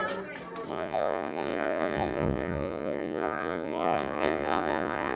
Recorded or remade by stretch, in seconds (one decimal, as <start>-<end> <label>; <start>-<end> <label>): 0.0-0.7 recorded; 0.7-5.2 remade